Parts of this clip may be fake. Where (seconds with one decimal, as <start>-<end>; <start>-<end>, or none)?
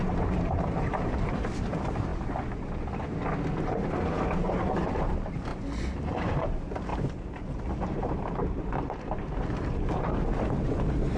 0.0-2.1; 4.0-5.5; 6.1-11.2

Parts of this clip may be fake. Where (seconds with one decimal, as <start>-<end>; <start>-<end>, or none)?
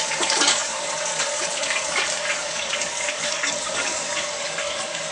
0.0-5.1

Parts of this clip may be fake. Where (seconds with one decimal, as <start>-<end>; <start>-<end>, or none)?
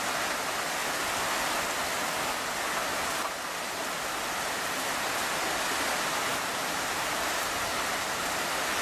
6.3-8.2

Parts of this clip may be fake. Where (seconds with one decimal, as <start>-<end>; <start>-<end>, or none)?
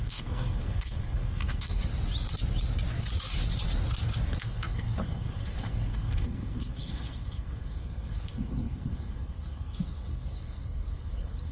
0.0-1.8; 4.4-11.5